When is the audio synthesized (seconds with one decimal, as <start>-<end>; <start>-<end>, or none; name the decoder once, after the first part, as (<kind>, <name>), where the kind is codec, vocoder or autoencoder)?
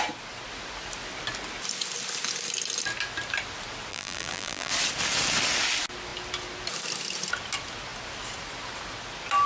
3.9-4.7 (vocoder, BigVGAN v2)